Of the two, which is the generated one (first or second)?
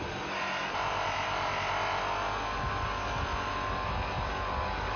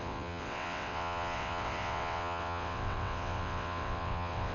second